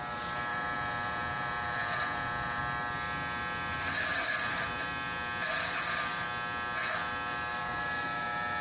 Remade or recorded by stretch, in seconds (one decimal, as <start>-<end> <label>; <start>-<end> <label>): 0.0-0.5 recorded; 0.5-2.6 remade; 2.6-7.5 recorded; 7.5-8.6 remade